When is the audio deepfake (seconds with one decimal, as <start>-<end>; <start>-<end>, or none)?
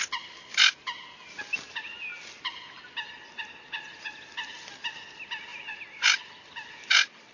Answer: none